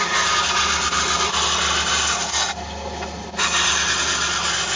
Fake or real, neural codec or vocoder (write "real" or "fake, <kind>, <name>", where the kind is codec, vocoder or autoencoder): real